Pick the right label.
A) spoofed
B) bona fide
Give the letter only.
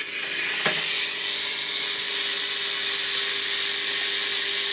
B